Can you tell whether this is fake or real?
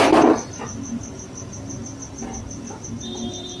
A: real